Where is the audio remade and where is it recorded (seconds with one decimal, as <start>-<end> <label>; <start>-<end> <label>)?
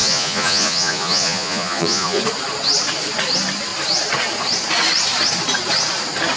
0.0-2.2 remade; 2.2-6.4 recorded